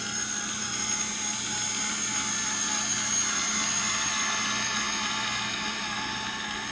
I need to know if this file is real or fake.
real